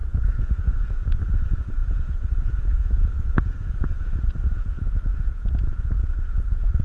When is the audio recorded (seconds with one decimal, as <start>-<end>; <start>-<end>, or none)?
none

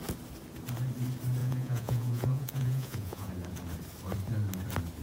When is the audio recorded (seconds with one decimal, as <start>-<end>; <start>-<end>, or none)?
0.0-1.4; 3.3-5.0

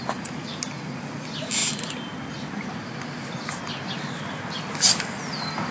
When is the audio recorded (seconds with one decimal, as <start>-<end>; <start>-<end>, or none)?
0.0-5.7

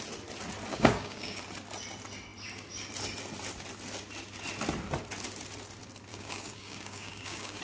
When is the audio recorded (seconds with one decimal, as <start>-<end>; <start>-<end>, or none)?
0.0-0.7; 1.4-6.1